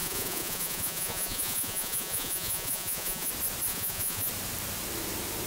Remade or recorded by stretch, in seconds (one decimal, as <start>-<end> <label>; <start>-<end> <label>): 0.0-3.3 remade; 3.3-3.7 recorded; 3.7-4.3 remade; 4.3-5.5 recorded